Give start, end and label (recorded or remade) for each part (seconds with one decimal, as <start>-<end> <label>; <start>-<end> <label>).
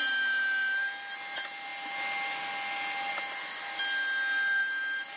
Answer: 0.0-5.2 recorded